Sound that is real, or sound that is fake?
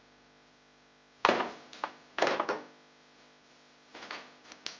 real